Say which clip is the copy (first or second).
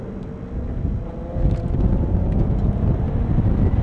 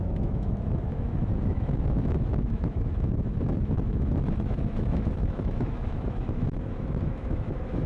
second